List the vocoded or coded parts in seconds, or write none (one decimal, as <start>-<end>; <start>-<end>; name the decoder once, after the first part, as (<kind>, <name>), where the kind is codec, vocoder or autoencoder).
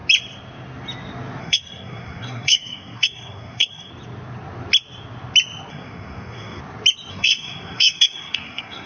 1.4-3.9 (codec, SNAC); 5.7-6.6; 7.1-8.9